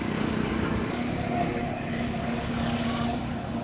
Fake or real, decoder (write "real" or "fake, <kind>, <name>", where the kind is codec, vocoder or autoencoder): fake, codec, DAC